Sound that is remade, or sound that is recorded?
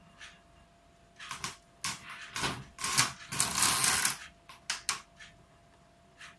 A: recorded